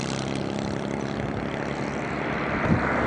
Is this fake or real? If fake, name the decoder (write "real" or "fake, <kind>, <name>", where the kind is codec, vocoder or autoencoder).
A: real